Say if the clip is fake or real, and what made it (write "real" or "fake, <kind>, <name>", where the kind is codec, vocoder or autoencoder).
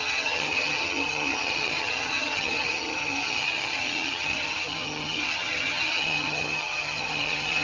fake, vocoder, HiFi-GAN